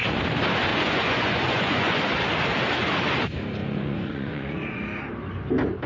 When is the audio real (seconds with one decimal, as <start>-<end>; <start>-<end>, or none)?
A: 0.0-0.7; 2.0-3.6; 4.8-5.9